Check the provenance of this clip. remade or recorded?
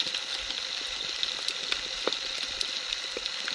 recorded